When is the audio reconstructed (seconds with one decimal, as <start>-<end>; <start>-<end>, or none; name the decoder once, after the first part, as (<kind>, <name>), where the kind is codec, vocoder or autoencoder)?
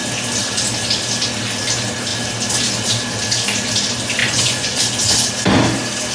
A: 4.2-4.8 (vocoder, Vocos)